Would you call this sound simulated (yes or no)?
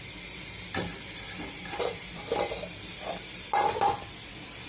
yes